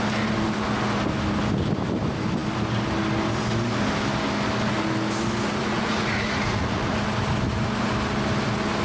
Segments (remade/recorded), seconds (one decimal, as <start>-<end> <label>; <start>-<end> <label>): 0.0-5.6 recorded; 5.6-7.0 remade; 7.0-8.8 recorded